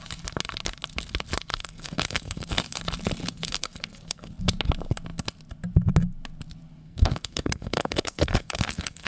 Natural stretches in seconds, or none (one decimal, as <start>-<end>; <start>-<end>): 0.0-1.5; 2.8-3.2; 4.3-6.8